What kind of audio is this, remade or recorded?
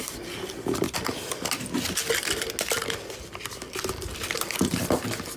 recorded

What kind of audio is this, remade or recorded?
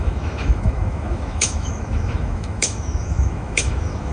remade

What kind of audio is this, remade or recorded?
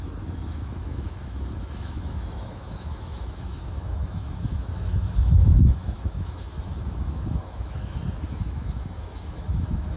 remade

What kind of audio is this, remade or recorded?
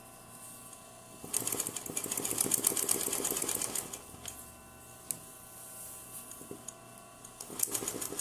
recorded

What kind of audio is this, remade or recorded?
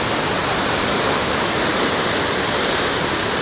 recorded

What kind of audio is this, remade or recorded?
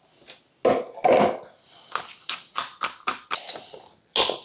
recorded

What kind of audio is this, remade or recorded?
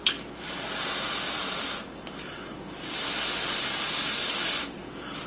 recorded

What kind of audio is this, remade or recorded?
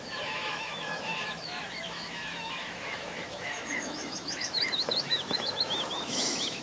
remade